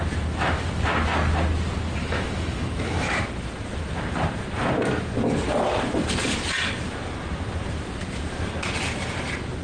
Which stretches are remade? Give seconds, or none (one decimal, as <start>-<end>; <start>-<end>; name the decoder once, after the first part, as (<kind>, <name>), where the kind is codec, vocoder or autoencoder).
2.0-3.1 (autoencoder, DAC-VAE)

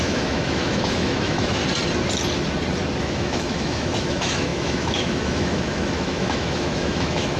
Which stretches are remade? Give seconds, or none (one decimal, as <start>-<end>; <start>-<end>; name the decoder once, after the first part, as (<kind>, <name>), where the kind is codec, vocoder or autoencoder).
0.0-1.6 (autoencoder, DAC-VAE); 3.0-7.4

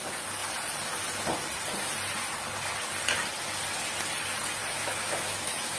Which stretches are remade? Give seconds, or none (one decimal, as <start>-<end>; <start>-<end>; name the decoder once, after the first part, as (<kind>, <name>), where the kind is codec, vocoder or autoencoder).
4.6-5.8 (autoencoder, DAC-VAE)

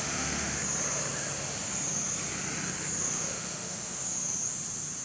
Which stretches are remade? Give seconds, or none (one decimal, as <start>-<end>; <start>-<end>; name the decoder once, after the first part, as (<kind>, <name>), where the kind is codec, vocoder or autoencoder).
0.0-0.6 (autoencoder, DAC-VAE); 3.0-4.0